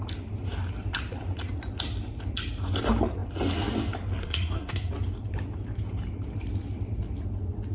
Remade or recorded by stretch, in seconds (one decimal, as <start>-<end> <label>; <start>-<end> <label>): 0.0-4.2 recorded; 4.2-4.9 remade; 4.9-7.7 recorded